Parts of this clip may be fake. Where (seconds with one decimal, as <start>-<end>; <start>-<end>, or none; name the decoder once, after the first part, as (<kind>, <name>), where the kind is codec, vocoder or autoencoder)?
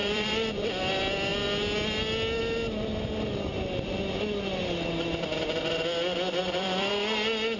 0.0-0.8 (vocoder, BigVGAN v2); 6.4-6.9